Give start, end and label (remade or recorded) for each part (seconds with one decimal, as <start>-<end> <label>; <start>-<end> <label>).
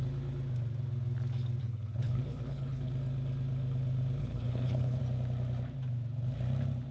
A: 0.0-1.6 recorded; 1.6-2.9 remade; 2.9-4.2 recorded; 4.2-5.0 remade; 5.0-6.9 recorded